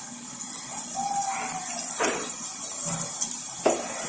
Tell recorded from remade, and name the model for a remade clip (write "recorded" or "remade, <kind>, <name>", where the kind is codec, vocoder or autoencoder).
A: recorded